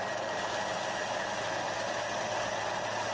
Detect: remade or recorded recorded